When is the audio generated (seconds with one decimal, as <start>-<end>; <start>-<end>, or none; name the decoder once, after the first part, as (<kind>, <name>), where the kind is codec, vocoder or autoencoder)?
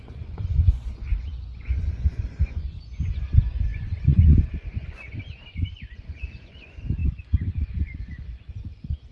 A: 0.0-9.1 (vocoder, Vocos)